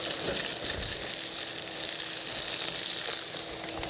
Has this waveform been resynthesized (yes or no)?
no